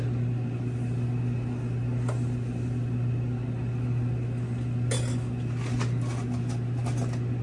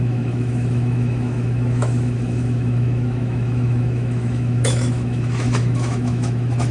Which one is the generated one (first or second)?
second